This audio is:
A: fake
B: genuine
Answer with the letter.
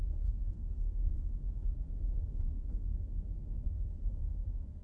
A